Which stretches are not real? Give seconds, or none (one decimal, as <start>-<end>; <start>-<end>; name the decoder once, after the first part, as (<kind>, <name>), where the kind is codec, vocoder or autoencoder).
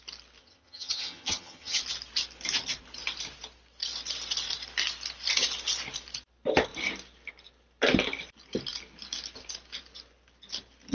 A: 0.4-1.8 (vocoder, HiFi-GAN)